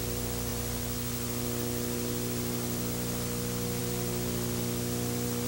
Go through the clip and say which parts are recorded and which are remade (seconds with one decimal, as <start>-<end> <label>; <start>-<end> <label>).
0.0-5.5 recorded